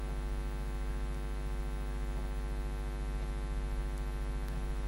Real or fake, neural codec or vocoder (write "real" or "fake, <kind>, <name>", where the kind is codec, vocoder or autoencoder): real